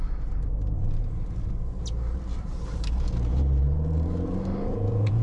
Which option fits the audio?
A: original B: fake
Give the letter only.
B